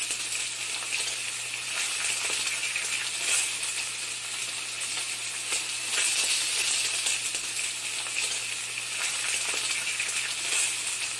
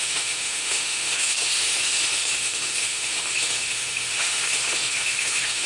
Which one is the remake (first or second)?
second